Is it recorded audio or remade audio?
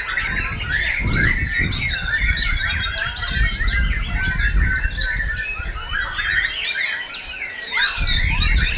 recorded